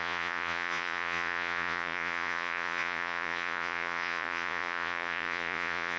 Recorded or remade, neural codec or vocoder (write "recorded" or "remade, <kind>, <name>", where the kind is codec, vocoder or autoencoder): remade, vocoder, Vocos